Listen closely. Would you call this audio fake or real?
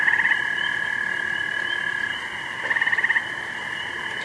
real